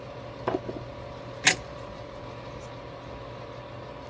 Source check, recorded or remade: recorded